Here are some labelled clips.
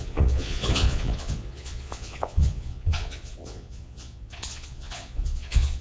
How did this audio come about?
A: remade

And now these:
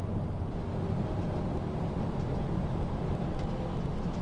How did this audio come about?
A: recorded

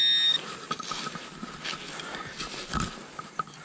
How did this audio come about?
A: recorded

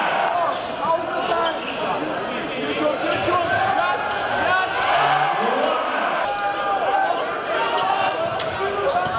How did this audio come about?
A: recorded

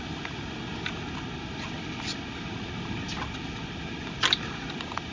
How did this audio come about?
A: recorded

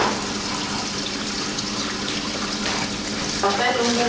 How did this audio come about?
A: recorded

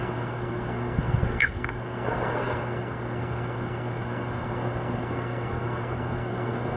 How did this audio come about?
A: remade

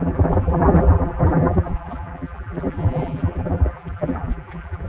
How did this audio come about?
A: remade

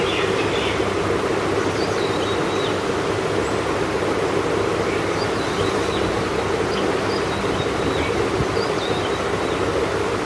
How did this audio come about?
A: recorded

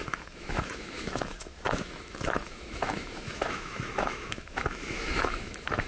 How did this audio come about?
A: remade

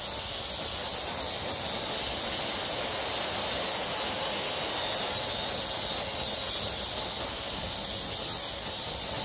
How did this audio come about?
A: recorded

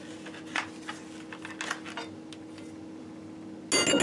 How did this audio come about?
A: recorded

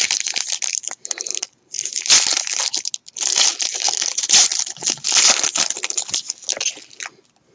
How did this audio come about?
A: recorded